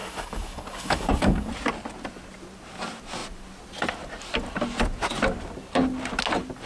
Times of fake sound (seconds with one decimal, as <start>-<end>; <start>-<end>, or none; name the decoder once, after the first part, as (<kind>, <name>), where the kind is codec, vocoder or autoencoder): 0.0-1.5 (codec, DAC)